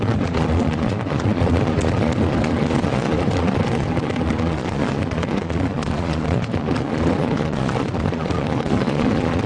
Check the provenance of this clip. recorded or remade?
remade